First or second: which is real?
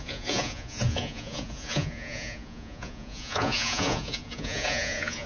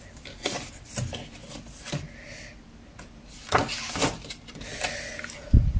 second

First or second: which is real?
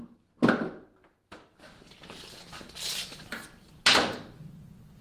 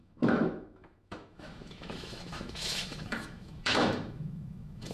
first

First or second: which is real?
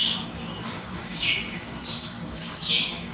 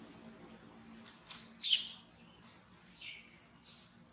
second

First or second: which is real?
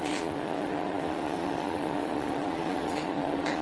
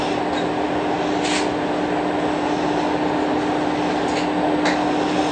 second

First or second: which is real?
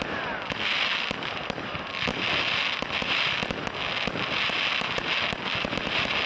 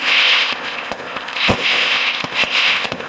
first